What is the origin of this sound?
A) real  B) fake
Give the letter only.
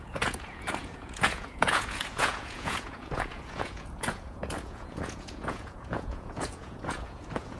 B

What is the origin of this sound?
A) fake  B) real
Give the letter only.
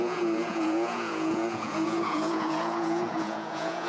A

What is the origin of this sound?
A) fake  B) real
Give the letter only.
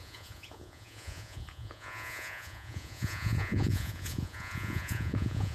A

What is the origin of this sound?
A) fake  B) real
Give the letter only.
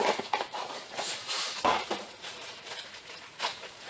A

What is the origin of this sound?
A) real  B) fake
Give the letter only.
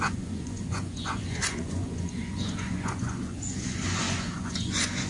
B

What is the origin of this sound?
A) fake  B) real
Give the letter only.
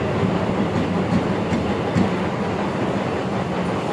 B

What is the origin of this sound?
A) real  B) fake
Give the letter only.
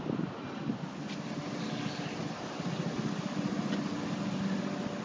A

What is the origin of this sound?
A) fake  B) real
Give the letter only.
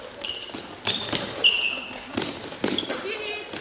B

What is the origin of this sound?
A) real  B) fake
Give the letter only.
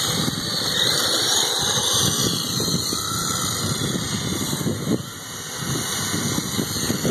A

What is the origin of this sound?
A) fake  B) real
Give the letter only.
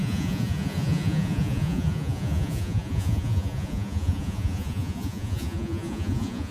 A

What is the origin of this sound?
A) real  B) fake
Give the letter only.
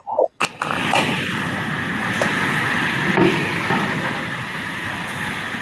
A